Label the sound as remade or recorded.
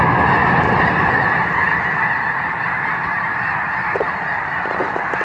recorded